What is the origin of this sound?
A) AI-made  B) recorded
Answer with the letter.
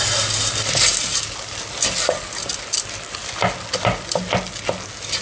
B